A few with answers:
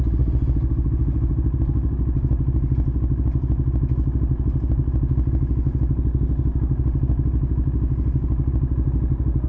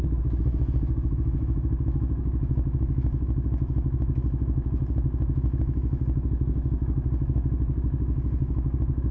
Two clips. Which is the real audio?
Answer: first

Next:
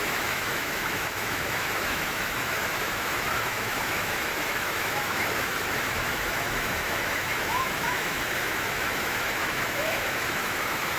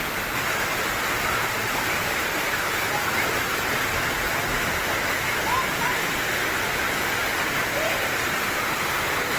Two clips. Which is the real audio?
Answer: second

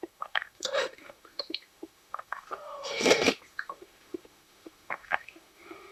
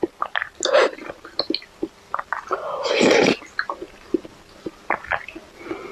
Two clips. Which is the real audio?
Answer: second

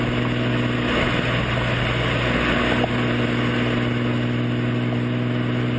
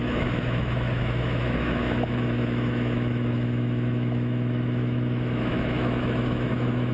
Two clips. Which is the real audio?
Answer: first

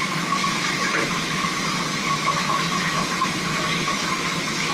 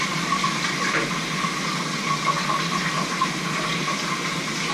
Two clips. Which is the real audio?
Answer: second